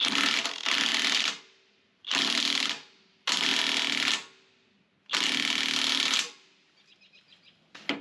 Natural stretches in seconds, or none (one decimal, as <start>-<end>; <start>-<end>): 0.0-8.0